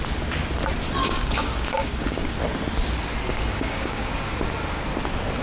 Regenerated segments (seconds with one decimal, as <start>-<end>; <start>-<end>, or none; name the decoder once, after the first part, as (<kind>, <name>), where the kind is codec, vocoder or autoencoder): 1.0-2.3 (codec, DAC); 3.3-4.1